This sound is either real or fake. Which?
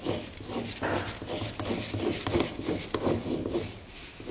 real